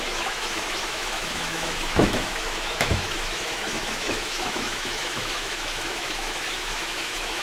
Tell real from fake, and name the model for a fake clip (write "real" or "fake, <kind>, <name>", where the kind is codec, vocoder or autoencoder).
fake, autoencoder, DAC-VAE